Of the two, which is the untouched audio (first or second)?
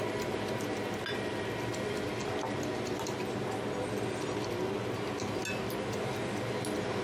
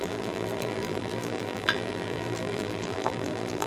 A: first